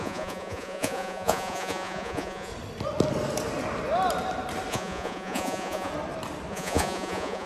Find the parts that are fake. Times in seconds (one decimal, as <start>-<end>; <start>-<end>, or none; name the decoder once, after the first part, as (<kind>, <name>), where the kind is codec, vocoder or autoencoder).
0.0-2.5 (vocoder, Vocos); 4.7-5.9; 6.5-7.5